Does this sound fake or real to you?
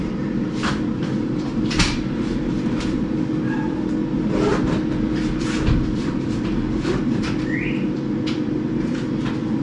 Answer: fake